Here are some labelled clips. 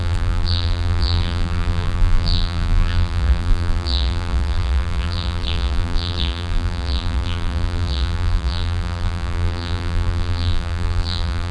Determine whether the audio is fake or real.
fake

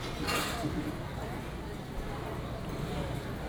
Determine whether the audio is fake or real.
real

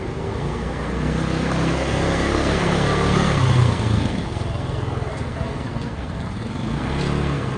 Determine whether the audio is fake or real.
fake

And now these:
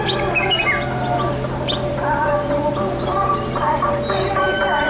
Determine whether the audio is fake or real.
real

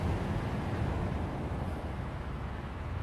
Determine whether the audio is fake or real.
fake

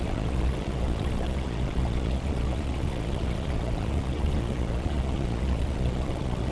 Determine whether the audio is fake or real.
fake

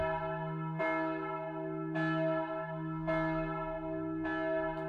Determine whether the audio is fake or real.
real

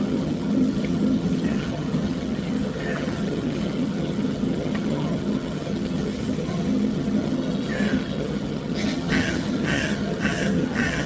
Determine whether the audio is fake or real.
fake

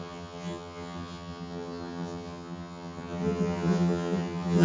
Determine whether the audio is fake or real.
fake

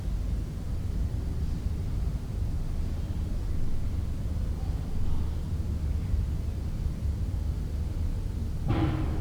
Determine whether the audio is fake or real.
real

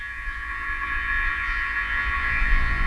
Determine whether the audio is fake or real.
fake